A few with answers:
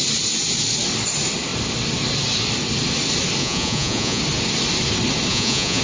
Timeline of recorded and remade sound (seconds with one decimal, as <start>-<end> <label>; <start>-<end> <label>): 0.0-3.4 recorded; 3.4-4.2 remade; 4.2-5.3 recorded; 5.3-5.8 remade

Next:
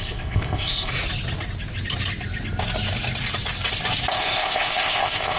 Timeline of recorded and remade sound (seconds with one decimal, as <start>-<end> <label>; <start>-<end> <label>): 0.0-0.9 remade; 0.9-4.1 recorded; 4.1-5.4 remade

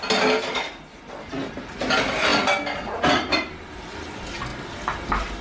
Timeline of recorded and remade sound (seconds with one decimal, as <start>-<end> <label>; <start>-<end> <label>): 0.0-5.4 recorded